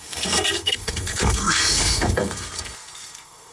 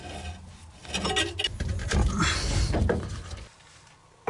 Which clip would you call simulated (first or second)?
first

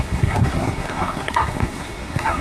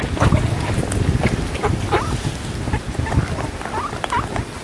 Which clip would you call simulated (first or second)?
first